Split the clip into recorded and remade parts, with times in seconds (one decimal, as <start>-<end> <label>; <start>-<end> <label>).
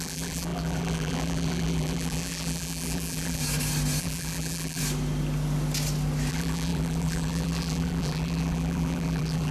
0.0-3.4 remade; 3.4-4.0 recorded; 4.0-4.8 remade; 4.8-6.3 recorded; 6.3-9.5 remade